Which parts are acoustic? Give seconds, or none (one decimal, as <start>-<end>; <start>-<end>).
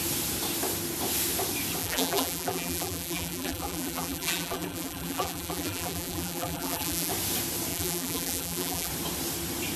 0.0-1.8; 7.1-7.7; 8.9-9.8